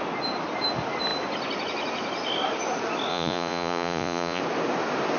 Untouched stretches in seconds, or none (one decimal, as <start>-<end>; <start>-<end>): 0.0-3.1; 4.4-5.2